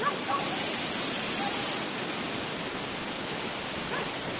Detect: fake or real real